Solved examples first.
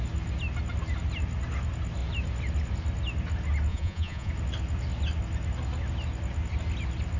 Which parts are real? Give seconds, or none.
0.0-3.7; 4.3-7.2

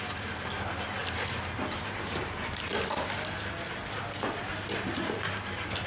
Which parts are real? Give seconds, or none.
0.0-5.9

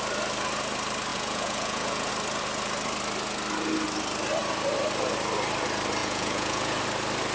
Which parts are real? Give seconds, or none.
0.0-1.1; 2.1-6.0; 6.8-7.3

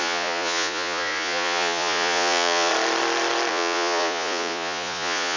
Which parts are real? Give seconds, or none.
2.7-3.5

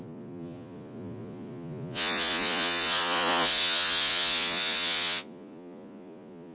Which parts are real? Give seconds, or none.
none

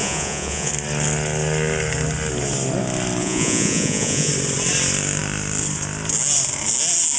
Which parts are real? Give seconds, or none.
0.7-3.2; 4.3-7.2

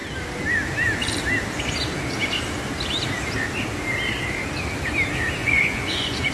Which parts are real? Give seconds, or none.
0.0-5.4

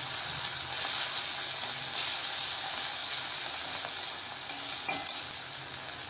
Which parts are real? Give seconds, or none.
0.0-6.1